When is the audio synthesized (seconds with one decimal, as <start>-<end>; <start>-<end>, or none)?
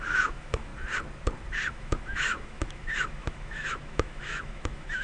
0.0-0.7; 1.7-5.0